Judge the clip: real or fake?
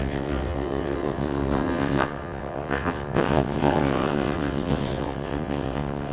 fake